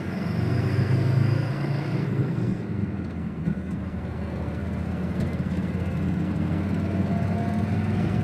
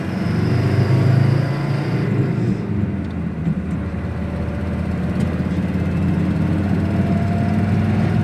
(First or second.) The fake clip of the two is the first